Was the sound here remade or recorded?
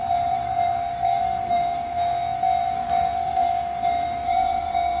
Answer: remade